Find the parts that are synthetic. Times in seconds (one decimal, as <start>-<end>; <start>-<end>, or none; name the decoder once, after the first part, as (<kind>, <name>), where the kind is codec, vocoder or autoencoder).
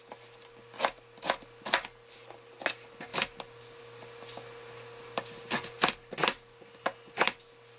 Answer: none